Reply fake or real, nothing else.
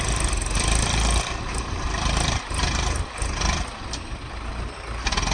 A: real